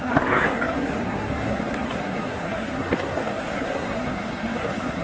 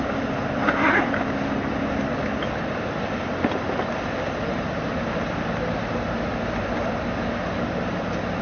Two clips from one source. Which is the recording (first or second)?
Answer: second